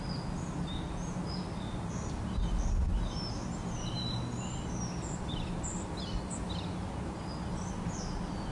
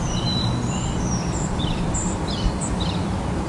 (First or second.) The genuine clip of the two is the first